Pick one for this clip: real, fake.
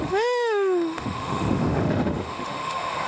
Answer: fake